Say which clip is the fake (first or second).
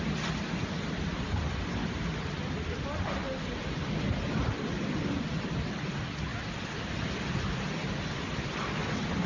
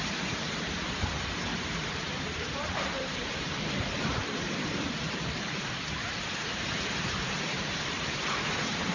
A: second